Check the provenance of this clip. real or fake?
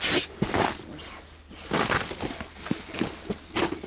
real